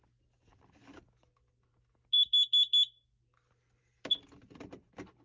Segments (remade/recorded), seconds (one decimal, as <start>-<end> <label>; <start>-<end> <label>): 0.0-5.2 recorded